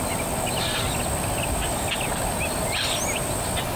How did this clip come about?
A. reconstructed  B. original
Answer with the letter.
B